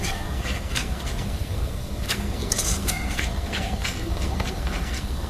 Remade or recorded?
remade